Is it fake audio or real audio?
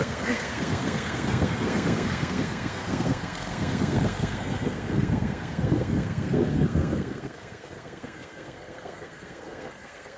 fake